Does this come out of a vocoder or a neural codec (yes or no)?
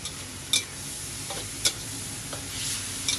no